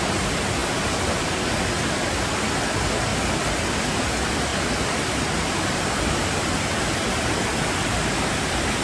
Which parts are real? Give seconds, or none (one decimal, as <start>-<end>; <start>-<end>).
0.0-8.8